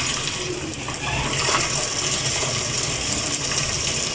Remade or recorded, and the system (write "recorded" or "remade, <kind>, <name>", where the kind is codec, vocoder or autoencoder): recorded